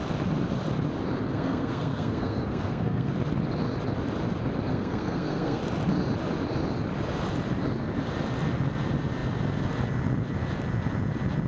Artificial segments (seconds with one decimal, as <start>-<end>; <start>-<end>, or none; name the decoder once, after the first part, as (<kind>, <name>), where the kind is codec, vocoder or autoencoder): 1.3-3.1 (codec, SNAC); 4.7-5.6